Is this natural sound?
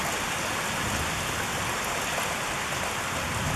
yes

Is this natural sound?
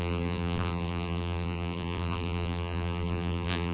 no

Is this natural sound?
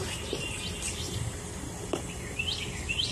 yes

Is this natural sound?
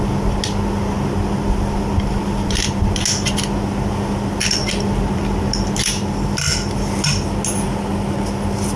yes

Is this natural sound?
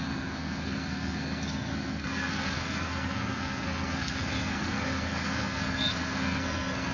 no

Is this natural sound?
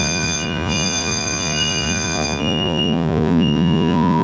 no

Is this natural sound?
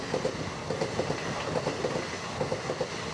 yes